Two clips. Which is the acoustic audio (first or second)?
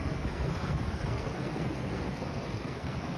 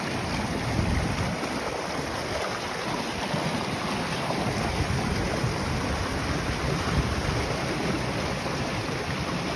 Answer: second